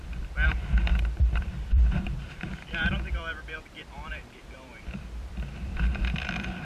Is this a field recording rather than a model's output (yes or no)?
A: no